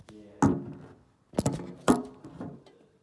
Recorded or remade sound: recorded